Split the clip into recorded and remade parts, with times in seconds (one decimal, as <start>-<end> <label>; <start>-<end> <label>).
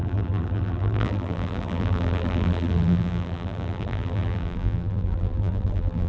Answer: 0.0-6.1 remade